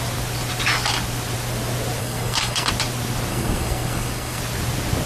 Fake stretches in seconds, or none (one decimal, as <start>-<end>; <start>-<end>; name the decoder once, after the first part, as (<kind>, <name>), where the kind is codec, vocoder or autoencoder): 2.0-2.7 (codec, SNAC); 3.3-4.4